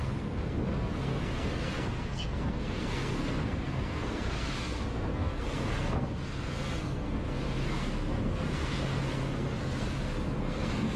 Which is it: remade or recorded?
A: remade